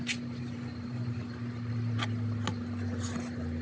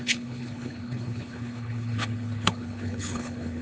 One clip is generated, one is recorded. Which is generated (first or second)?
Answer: second